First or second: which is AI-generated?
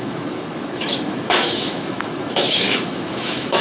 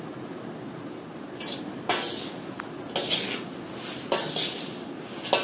first